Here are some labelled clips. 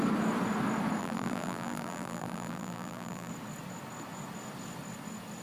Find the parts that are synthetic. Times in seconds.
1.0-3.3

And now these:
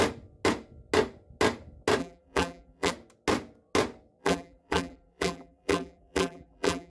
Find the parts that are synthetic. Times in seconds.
2.0-2.9; 4.2-6.9

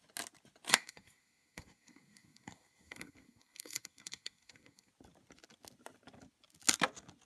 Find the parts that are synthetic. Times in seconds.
0.7-4.9

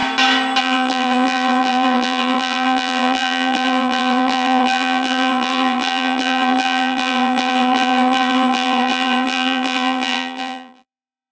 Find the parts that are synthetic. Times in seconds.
0.6-11.3

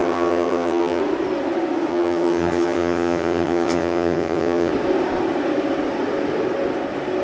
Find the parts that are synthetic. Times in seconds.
0.0-1.0; 1.9-4.7

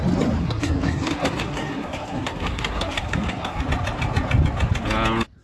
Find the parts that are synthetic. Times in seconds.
0.4-3.6